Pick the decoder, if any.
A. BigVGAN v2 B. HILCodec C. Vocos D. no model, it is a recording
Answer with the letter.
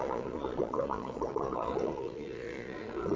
C